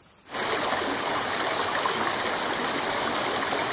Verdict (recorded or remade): recorded